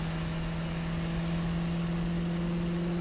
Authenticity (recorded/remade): recorded